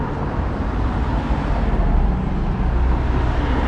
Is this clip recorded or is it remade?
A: remade